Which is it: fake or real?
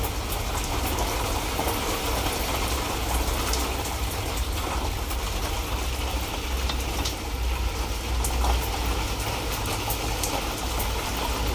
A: real